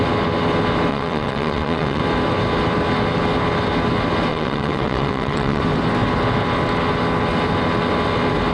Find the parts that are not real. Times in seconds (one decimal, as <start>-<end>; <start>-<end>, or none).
0.9-2.0; 4.3-5.6